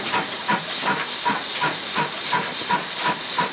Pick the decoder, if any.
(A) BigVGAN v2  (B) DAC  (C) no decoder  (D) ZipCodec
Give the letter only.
C